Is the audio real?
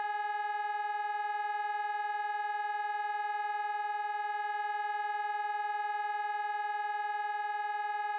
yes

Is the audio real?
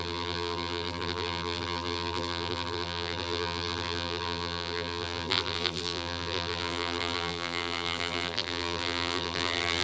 no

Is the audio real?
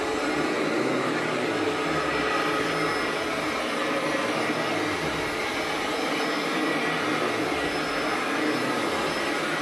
yes